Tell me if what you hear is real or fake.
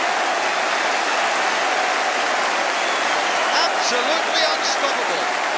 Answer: real